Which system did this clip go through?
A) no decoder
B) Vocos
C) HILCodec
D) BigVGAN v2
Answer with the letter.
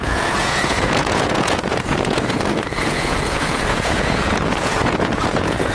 B